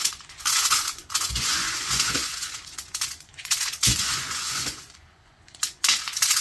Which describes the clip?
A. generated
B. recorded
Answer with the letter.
A